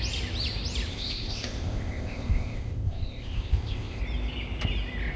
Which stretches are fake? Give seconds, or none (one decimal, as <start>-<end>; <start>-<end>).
0.9-4.0